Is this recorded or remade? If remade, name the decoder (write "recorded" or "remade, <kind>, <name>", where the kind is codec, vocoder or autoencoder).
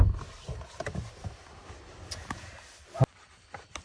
recorded